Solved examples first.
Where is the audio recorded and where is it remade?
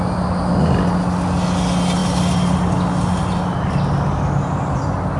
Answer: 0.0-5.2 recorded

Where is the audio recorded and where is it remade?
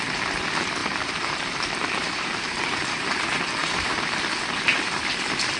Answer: 0.0-0.8 recorded; 0.8-3.2 remade; 3.2-3.6 recorded; 3.6-4.1 remade; 4.1-5.6 recorded